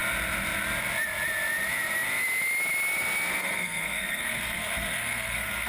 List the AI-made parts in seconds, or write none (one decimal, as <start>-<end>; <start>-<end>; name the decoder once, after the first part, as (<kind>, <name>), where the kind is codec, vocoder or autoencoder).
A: 3.4-5.7 (codec, SNAC)